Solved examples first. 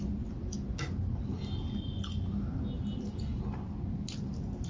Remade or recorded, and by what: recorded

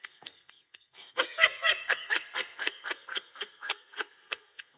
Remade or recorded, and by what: remade, codec, SNAC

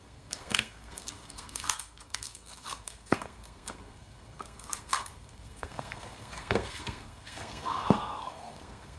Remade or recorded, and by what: remade, codec, SNAC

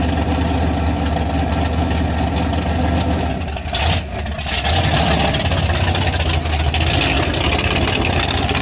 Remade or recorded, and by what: recorded